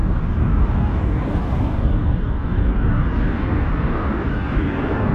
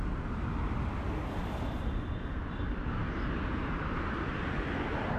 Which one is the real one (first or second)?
second